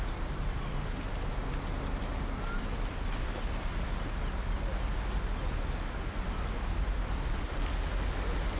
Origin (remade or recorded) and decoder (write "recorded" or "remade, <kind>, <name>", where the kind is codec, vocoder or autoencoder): recorded